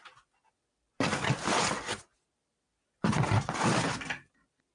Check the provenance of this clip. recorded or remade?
recorded